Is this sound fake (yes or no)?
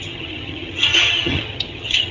yes